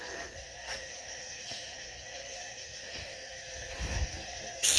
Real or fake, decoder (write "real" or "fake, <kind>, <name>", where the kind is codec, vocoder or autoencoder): fake, codec, SNAC